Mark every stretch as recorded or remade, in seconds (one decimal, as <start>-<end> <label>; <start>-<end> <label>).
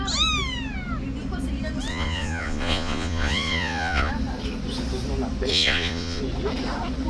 0.0-1.9 recorded; 1.9-4.1 remade; 4.1-5.5 recorded; 5.5-6.2 remade; 6.2-7.1 recorded